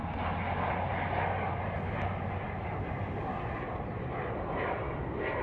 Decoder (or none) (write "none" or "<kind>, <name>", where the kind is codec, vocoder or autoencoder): none